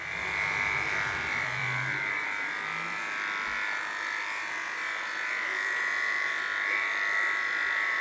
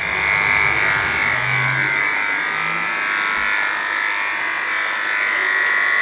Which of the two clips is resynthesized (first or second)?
first